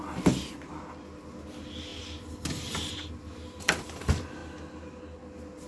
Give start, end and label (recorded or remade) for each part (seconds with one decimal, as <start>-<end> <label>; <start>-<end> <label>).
0.0-5.7 recorded